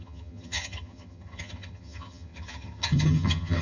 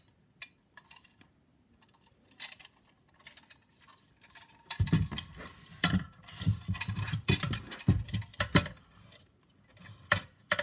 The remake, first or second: first